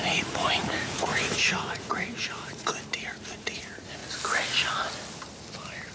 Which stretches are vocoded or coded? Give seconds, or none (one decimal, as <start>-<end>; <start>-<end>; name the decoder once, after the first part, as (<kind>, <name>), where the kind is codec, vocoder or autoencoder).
0.0-2.7 (vocoder, Vocos); 3.3-4.0